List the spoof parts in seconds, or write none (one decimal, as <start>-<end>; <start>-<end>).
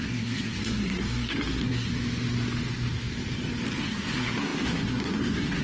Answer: 0.0-1.9; 3.8-5.6